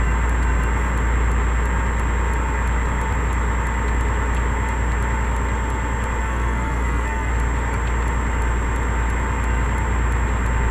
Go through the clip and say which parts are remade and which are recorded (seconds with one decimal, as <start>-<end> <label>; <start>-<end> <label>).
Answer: 0.0-6.2 recorded; 6.2-7.3 remade; 7.3-10.7 recorded